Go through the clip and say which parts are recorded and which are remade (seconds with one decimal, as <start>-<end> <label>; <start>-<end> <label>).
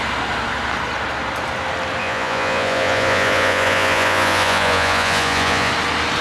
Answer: 0.0-2.0 recorded; 2.0-5.7 remade; 5.7-6.2 recorded